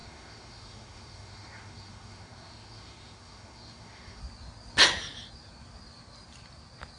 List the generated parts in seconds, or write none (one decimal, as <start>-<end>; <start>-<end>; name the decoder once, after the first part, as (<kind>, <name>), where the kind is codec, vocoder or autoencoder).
0.0-4.2 (autoencoder, DAC-VAE)